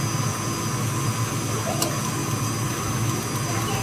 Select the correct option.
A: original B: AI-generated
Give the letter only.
A